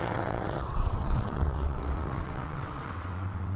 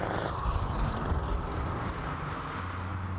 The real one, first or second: second